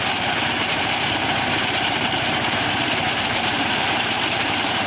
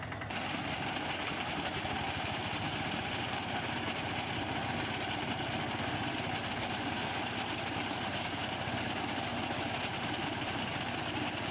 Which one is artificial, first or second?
first